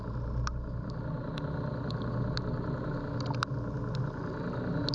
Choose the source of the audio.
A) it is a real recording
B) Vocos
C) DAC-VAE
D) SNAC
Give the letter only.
A